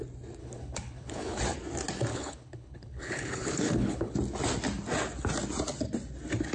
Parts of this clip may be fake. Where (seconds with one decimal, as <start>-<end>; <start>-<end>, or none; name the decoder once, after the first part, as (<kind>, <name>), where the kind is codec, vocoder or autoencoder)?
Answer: 0.4-1.4 (codec, HILCodec); 2.1-4.1